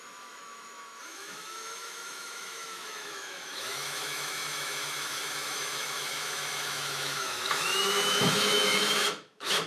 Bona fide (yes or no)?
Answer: no